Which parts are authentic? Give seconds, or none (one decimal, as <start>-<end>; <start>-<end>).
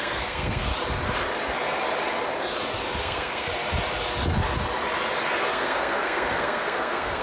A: 0.7-3.0; 3.5-5.5